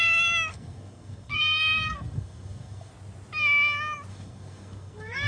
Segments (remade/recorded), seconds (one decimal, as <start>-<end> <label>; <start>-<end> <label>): 0.0-0.5 recorded; 0.5-2.9 remade; 2.9-4.1 recorded; 4.1-5.3 remade